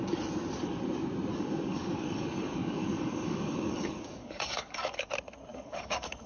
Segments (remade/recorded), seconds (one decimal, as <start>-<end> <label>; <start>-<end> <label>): 0.0-1.3 recorded; 1.3-5.1 remade; 5.1-5.5 recorded; 5.5-6.3 remade